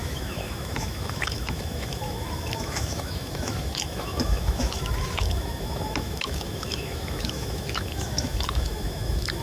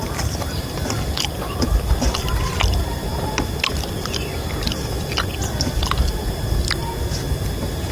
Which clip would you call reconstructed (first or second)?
first